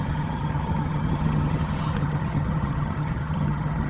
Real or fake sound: fake